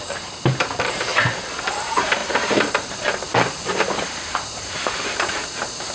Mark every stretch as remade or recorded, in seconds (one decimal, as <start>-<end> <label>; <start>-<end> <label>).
0.0-1.1 remade; 1.1-1.8 recorded; 1.8-5.9 remade